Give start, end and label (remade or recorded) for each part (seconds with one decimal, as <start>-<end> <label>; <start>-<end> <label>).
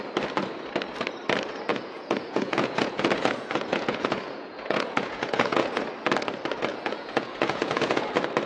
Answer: 0.0-1.7 recorded; 1.7-5.8 remade; 5.8-6.7 recorded; 6.7-8.1 remade; 8.1-8.5 recorded